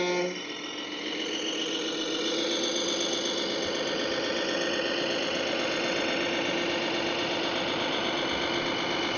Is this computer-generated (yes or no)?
no